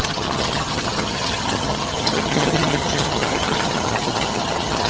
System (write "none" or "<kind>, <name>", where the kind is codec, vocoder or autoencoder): vocoder, HiFi-GAN